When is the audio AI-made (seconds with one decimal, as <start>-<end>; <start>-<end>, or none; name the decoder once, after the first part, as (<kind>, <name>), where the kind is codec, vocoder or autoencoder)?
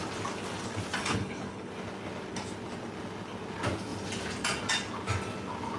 1.0-1.7 (codec, HILCodec)